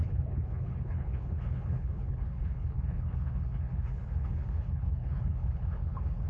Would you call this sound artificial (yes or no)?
yes